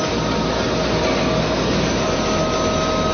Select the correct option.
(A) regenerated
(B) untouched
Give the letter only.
B